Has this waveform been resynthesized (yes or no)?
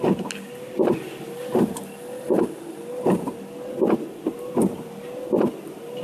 no